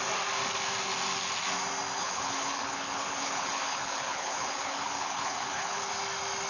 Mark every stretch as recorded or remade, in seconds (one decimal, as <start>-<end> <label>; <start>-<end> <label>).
0.0-2.0 recorded; 2.0-5.9 remade; 5.9-6.5 recorded

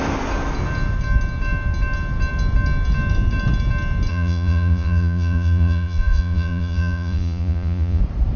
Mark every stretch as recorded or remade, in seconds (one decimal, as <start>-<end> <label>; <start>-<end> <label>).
0.0-4.1 recorded; 4.1-8.0 remade; 8.0-8.4 recorded

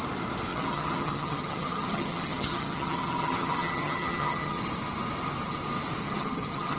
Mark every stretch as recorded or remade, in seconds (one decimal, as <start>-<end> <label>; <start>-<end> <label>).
0.0-0.5 recorded; 0.5-4.6 remade; 4.6-6.0 recorded; 6.0-6.8 remade

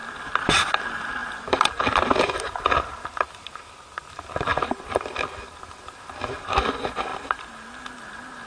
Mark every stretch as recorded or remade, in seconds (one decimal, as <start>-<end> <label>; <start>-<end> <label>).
0.0-0.7 remade; 0.7-4.5 recorded; 4.5-5.0 remade; 5.0-7.1 recorded; 7.1-7.8 remade; 7.8-8.5 recorded

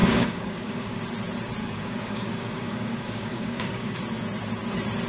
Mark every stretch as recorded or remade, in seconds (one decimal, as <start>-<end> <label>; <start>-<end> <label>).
0.0-1.0 remade; 1.0-1.6 recorded; 1.6-4.0 remade; 4.0-5.1 recorded

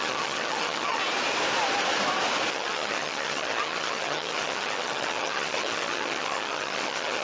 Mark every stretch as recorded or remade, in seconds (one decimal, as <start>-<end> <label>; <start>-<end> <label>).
0.0-1.0 remade; 1.0-2.5 recorded; 2.5-7.2 remade